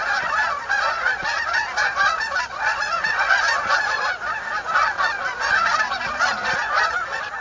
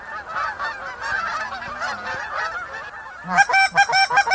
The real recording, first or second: second